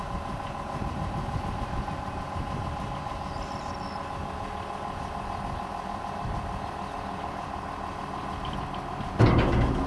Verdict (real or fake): real